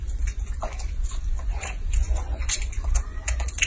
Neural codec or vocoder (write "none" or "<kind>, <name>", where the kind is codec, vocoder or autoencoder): vocoder, Vocos